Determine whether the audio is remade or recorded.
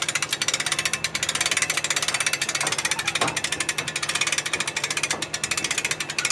recorded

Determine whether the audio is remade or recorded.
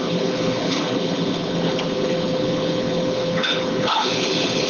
remade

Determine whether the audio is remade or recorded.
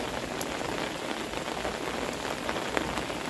recorded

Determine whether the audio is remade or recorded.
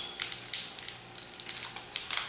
recorded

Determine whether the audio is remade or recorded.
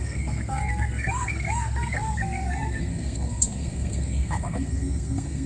remade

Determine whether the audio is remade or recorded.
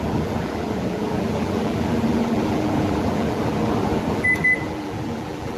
remade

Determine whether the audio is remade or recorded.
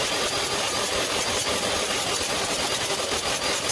recorded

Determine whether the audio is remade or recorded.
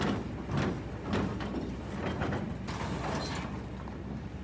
recorded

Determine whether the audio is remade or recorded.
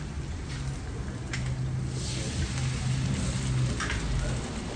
recorded